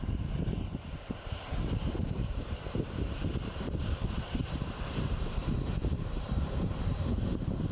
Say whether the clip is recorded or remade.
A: remade